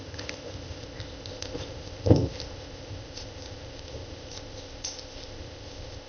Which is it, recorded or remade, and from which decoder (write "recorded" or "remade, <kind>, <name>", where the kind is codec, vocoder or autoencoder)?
remade, codec, ZipCodec